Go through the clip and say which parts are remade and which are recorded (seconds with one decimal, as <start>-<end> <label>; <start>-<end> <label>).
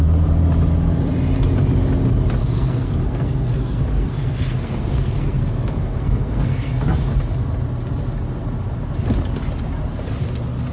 0.0-2.4 recorded; 2.4-6.7 remade; 6.7-10.7 recorded